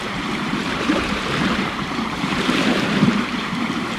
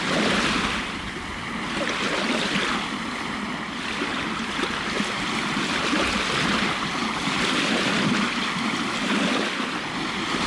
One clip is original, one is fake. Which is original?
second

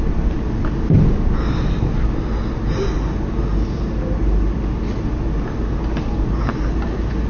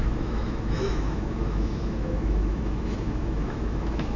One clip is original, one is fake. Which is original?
first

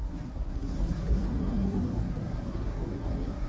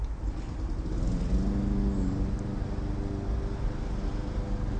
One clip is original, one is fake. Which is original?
second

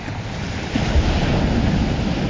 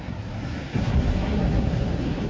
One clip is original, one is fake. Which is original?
first